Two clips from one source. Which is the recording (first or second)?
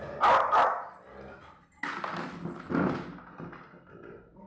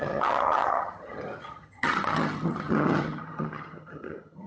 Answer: first